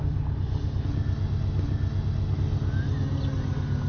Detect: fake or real real